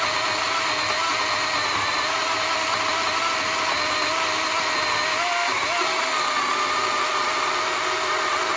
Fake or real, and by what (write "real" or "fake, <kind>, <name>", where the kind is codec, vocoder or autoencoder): real